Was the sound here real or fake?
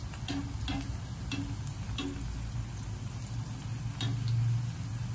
real